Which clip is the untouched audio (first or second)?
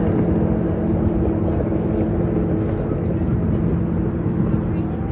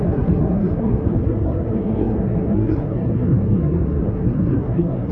first